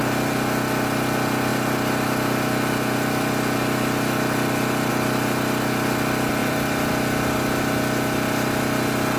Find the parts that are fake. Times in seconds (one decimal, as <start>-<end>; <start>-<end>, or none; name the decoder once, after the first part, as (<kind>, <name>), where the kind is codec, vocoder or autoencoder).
6.4-6.9 (vocoder, BigVGAN v2)